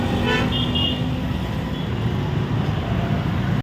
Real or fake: real